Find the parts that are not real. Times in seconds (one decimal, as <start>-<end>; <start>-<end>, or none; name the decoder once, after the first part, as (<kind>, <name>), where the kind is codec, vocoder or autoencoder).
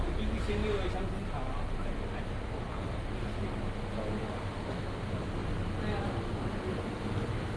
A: none